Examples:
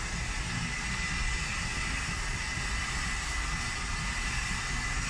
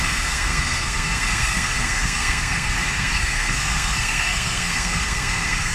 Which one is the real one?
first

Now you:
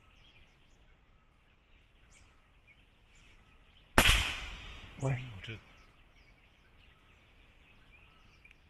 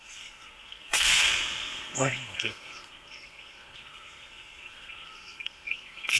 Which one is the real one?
first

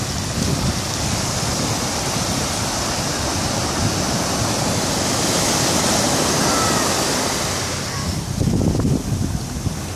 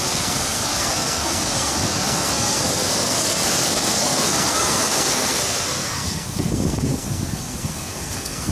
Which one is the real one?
first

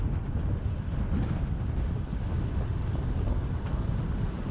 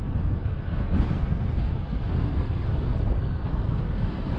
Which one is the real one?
first